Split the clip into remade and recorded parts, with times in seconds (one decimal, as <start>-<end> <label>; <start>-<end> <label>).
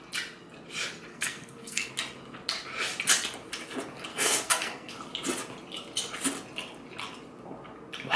0.0-1.1 recorded; 1.1-1.9 remade; 1.9-4.1 recorded; 4.1-4.9 remade; 4.9-8.2 recorded